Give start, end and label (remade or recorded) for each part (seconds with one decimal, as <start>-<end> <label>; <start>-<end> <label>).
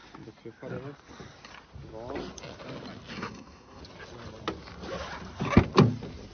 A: 0.0-3.1 recorded; 3.1-3.8 remade; 3.8-6.3 recorded